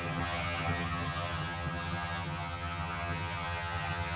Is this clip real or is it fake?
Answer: fake